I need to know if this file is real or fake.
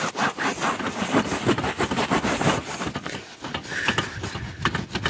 real